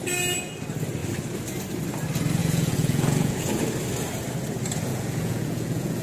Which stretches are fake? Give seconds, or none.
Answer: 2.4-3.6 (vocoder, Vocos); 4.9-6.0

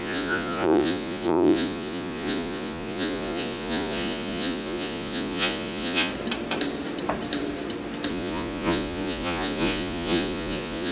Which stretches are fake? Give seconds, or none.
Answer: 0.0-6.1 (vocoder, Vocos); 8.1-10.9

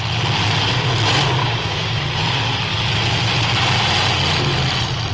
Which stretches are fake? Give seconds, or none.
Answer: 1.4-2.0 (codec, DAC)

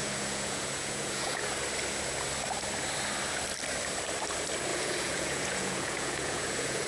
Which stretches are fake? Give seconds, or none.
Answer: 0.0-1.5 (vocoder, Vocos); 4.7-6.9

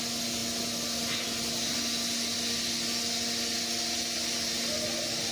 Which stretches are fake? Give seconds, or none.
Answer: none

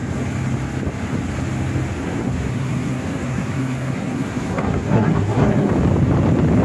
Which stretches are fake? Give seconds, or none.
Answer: 2.0-5.7 (codec, SNAC)